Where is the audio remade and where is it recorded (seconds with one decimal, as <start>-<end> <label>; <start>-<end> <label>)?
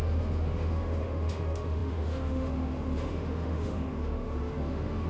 0.0-5.1 remade